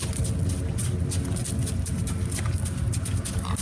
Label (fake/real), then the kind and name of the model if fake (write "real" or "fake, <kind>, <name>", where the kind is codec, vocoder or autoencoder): real